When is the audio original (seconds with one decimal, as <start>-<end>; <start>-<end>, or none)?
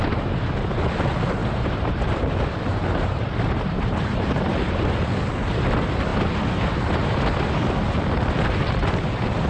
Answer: 0.0-1.4; 1.9-2.7; 4.5-9.5